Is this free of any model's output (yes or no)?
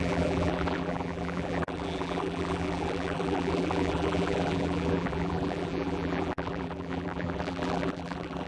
no